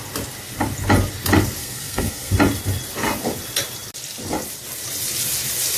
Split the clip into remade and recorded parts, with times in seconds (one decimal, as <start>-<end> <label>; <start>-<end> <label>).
0.0-1.6 recorded; 1.6-2.3 remade; 2.3-5.8 recorded